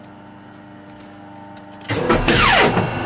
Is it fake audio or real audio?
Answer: real